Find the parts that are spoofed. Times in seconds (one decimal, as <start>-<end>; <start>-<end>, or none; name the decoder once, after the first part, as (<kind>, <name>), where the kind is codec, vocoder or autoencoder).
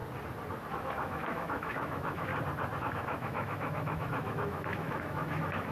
0.7-2.3 (autoencoder, DAC-VAE); 2.8-5.7